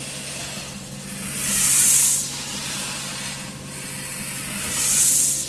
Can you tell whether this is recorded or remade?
recorded